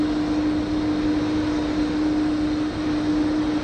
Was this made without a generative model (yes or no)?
yes